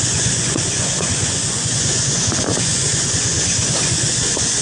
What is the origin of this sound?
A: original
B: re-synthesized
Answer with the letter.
B